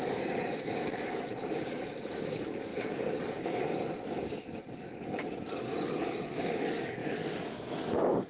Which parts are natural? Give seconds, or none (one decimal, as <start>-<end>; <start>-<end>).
none